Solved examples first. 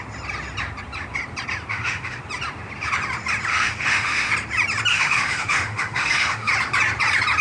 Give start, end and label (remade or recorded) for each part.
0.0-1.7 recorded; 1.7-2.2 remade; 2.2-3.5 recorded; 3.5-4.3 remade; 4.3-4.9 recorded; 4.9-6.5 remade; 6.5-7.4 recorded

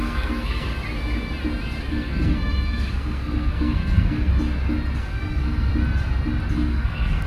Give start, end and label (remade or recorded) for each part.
0.0-0.7 remade; 0.7-1.9 recorded; 1.9-4.3 remade; 4.3-5.0 recorded; 5.0-5.7 remade; 5.7-6.5 recorded; 6.5-7.3 remade